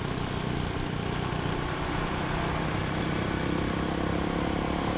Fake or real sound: fake